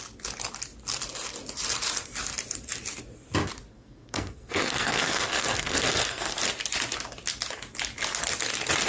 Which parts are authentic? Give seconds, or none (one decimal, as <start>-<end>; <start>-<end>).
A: 0.0-3.7; 6.3-8.9